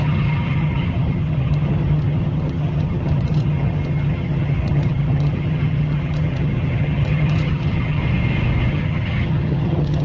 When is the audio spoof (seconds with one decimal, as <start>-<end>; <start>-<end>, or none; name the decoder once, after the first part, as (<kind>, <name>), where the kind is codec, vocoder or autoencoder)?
0.0-8.0 (vocoder, HiFi-GAN); 8.7-10.0